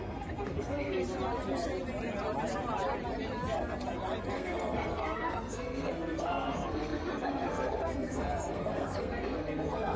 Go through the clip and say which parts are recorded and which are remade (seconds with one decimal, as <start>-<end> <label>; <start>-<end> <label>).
0.0-1.0 remade; 1.0-4.3 recorded; 4.3-10.0 remade